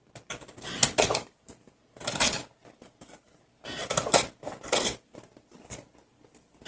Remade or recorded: recorded